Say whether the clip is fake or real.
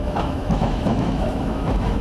fake